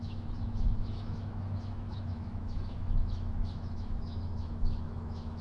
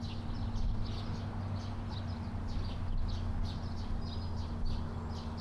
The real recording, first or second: second